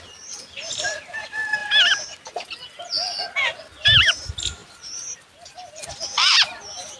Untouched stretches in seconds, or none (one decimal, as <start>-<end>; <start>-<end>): 0.0-7.0